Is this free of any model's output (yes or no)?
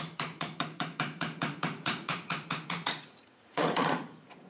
no